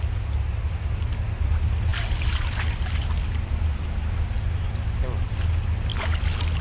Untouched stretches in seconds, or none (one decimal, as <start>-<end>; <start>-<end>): 0.0-6.6